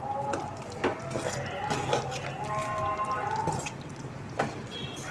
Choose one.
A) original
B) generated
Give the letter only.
A